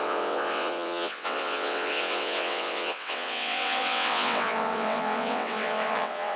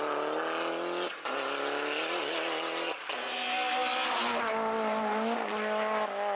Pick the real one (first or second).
second